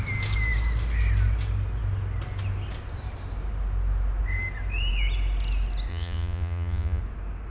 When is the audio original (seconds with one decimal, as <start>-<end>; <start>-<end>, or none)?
0.0-5.9; 7.0-7.5